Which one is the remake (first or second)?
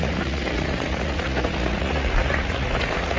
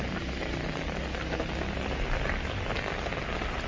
first